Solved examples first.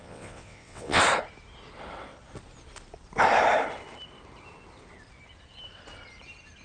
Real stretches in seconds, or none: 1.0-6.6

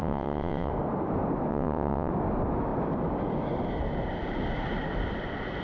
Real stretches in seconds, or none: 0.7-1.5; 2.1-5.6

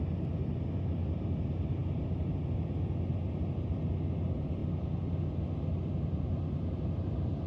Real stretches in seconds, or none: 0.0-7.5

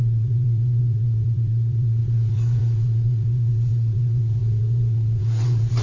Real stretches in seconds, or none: none

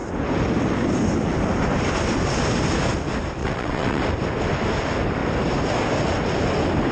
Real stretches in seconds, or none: 0.0-3.4; 4.0-6.9